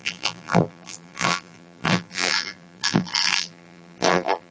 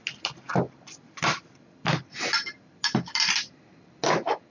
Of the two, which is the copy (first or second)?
first